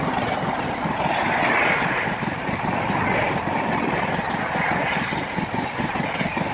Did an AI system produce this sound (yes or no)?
no